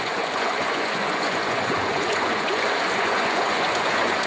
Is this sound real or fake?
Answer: fake